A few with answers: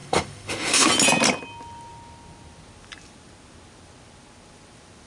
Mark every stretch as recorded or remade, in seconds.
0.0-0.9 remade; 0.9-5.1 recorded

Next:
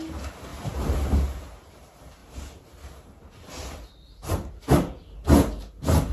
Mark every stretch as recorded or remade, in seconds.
0.0-6.1 recorded